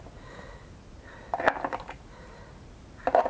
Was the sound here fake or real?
real